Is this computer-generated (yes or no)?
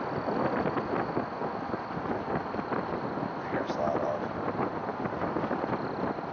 no